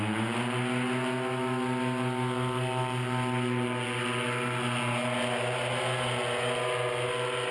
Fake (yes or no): no